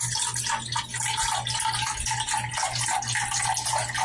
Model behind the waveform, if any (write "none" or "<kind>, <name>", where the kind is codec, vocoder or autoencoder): none